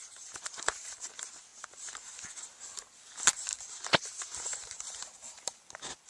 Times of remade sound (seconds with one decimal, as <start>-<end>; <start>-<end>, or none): 0.0-1.0; 1.5-2.2; 3.5-5.6